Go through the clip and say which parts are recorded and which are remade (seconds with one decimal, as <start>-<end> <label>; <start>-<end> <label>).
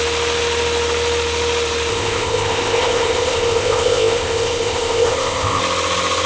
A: 0.0-1.9 recorded; 1.9-5.6 remade; 5.6-6.3 recorded